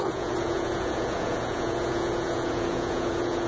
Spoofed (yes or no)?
yes